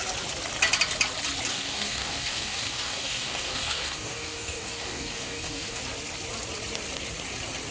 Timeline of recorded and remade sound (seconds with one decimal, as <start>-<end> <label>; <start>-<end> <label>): 0.0-1.5 recorded; 1.5-5.8 remade; 5.8-7.7 recorded

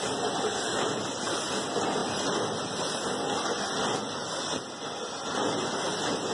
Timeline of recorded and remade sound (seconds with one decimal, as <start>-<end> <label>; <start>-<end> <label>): 0.0-6.3 recorded

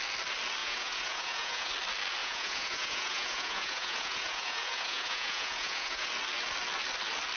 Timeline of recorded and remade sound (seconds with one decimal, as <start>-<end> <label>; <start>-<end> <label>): 0.0-0.6 recorded; 0.6-1.7 remade; 1.7-2.2 recorded; 2.2-6.1 remade; 6.1-7.4 recorded

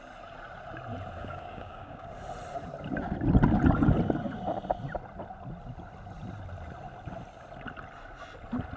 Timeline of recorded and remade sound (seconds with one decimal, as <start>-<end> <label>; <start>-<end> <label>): 0.0-1.2 recorded; 1.2-2.1 remade; 2.1-8.8 recorded

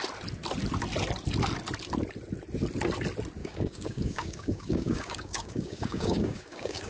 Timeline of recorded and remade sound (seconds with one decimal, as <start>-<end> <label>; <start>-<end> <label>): 0.0-3.4 recorded; 3.4-6.9 remade

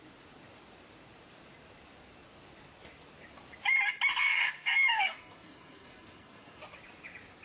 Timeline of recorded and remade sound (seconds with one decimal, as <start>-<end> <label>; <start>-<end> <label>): 0.0-4.1 recorded; 4.1-6.6 remade; 6.6-7.4 recorded